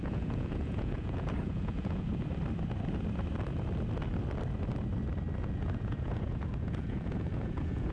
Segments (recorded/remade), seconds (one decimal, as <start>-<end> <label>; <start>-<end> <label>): 0.0-2.1 remade; 2.1-5.4 recorded; 5.4-7.9 remade